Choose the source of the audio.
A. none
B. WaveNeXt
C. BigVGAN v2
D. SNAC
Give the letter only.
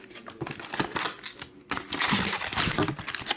A